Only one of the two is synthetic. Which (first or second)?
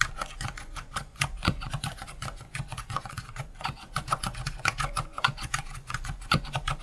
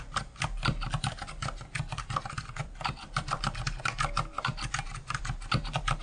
first